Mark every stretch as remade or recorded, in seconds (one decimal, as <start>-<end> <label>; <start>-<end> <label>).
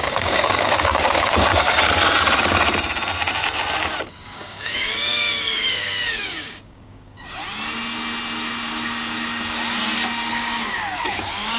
0.0-1.5 remade; 1.5-4.1 recorded; 4.1-7.4 remade; 7.4-10.3 recorded; 10.3-11.6 remade